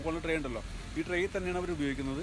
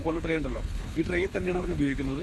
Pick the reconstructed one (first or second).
second